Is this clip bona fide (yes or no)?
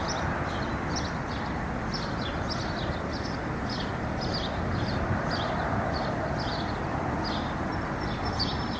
yes